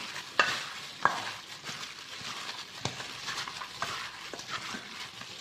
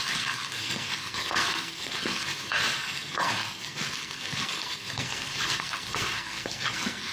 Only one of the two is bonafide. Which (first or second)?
first